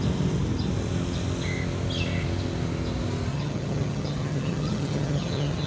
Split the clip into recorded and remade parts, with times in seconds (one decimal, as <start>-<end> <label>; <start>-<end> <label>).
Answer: 0.0-3.3 recorded; 3.3-5.7 remade